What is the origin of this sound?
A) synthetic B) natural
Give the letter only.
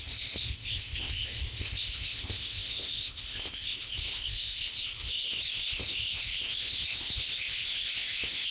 A